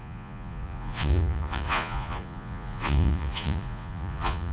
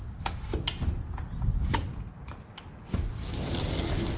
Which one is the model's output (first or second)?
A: first